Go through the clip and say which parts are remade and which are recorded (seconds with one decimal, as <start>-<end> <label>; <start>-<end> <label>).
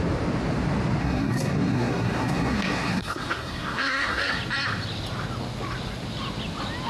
0.0-1.0 recorded; 1.0-4.4 remade; 4.4-6.9 recorded